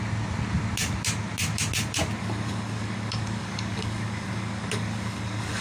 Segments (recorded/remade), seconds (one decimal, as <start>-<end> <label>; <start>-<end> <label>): 0.0-2.2 recorded; 2.2-5.6 remade